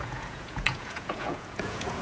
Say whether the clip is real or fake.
fake